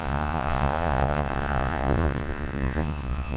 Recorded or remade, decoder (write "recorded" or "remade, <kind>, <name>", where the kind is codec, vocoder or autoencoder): remade, vocoder, Vocos